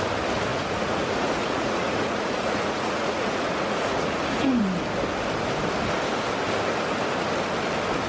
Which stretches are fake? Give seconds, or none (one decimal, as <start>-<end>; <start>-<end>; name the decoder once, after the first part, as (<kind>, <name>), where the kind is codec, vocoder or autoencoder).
0.5-4.6 (vocoder, Vocos)